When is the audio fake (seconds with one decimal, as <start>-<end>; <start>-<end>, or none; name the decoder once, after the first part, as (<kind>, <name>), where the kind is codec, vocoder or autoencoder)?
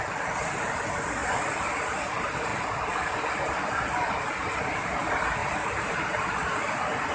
none